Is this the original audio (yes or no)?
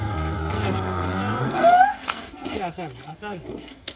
no